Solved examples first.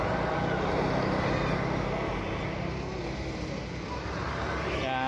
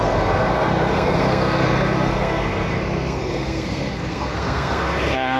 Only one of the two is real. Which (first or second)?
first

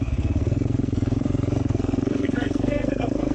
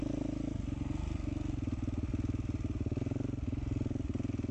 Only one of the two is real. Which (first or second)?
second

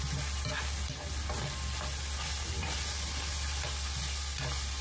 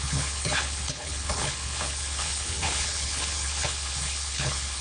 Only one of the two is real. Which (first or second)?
first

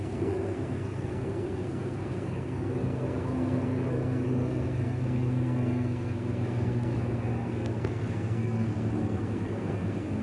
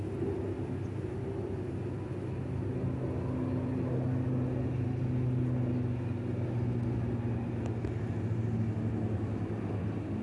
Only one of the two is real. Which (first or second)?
second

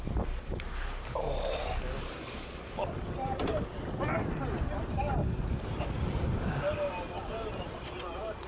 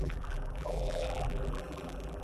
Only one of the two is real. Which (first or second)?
first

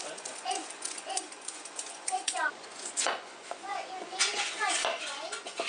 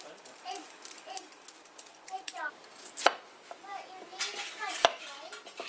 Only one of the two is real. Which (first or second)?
second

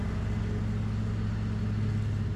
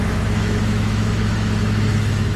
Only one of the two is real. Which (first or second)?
first